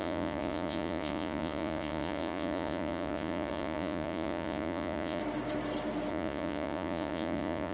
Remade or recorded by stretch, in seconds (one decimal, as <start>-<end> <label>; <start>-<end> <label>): 0.0-5.2 remade; 5.2-6.1 recorded; 6.1-7.7 remade